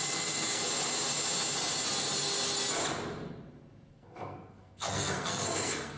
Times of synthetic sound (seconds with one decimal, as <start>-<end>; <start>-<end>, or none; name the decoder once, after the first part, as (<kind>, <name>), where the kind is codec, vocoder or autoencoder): 0.0-0.6 (codec, SNAC); 3.9-6.0